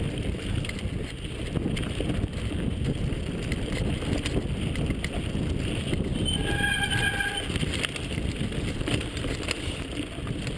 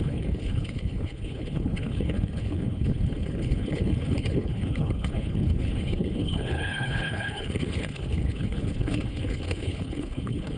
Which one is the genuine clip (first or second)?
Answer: first